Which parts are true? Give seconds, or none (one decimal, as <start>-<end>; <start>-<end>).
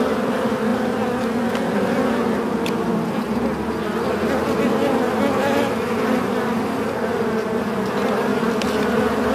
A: 0.0-9.3